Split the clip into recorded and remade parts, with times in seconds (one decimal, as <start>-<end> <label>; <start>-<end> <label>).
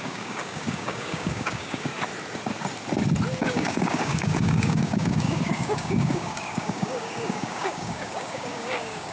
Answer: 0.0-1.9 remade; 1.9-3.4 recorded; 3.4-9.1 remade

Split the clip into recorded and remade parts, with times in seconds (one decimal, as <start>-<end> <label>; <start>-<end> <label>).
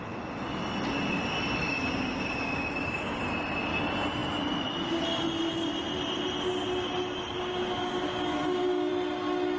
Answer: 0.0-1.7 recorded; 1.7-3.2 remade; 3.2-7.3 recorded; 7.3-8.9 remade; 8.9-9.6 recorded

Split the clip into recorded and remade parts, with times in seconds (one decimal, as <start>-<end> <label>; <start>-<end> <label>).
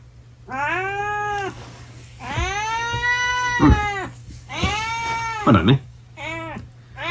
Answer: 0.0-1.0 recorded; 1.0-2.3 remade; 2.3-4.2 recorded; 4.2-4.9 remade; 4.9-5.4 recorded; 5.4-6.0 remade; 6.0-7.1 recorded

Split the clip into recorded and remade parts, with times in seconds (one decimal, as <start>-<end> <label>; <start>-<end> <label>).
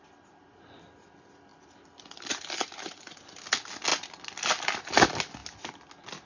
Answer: 0.0-6.3 recorded